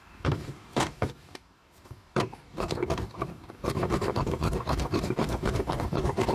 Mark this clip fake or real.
fake